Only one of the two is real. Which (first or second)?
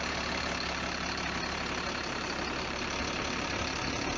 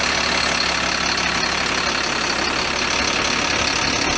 second